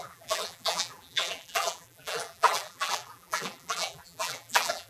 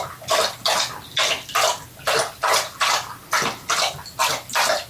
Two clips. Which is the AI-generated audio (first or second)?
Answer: first